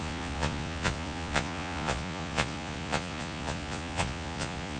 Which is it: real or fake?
fake